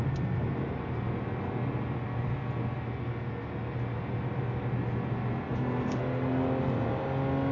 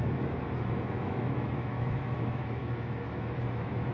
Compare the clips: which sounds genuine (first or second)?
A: first